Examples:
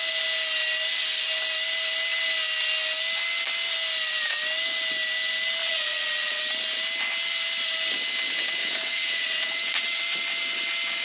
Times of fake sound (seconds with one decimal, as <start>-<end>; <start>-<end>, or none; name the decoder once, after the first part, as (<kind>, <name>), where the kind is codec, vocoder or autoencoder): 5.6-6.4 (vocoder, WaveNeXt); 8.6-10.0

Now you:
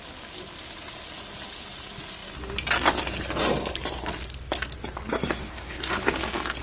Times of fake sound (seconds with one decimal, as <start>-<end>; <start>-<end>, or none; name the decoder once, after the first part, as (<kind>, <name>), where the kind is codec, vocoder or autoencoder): 5.4-5.9 (codec, DAC)

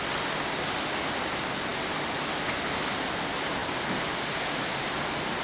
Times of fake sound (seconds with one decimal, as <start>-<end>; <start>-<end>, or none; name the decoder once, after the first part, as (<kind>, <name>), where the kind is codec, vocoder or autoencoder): none

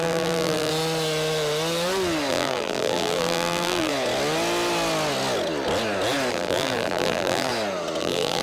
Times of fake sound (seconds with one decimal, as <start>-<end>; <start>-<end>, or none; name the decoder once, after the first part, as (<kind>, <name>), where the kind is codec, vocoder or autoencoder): 0.0-0.7 (vocoder, BigVGAN v2); 2.3-3.9; 6.3-7.5; 8.0-8.4

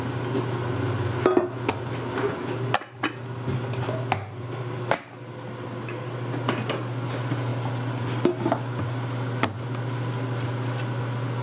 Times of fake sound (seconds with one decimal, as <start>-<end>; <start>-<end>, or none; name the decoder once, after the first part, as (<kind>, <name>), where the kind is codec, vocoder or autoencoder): none

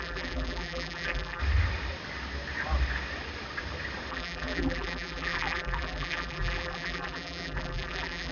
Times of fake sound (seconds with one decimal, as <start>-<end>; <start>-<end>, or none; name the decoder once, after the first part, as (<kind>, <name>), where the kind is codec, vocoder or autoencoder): 0.0-1.4 (vocoder, BigVGAN v2); 4.1-8.3